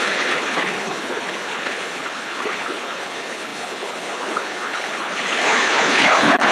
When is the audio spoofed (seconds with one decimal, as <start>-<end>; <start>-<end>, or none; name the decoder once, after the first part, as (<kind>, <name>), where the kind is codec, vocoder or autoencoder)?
0.0-6.5 (codec, HILCodec)